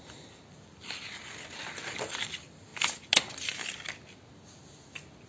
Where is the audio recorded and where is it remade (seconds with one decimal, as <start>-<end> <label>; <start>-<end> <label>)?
0.0-2.7 remade; 2.7-5.3 recorded